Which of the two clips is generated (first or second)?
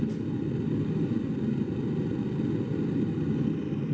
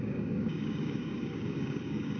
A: second